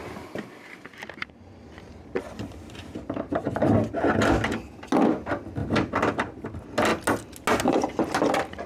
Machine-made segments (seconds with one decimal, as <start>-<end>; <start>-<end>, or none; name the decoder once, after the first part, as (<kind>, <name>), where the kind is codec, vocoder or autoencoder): 0.0-3.3 (vocoder, BigVGAN v2); 5.6-6.4